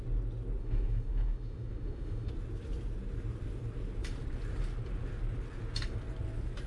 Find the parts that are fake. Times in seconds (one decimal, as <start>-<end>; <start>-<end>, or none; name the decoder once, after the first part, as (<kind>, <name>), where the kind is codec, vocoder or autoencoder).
0.6-2.3 (autoencoder, DAC-VAE)